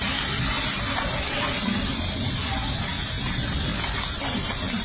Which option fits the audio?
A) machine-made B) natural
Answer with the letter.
B